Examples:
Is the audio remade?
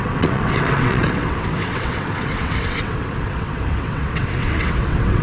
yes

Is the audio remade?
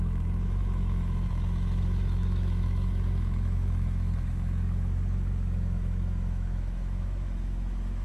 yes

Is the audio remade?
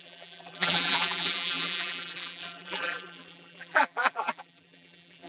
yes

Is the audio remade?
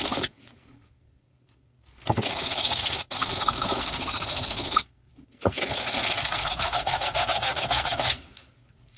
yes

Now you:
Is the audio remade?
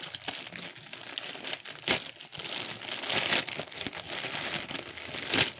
no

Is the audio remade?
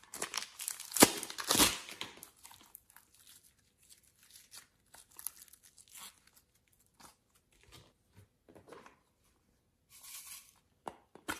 no